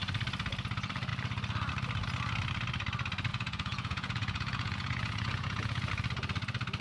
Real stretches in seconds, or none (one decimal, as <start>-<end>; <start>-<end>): 0.0-3.3; 5.9-6.8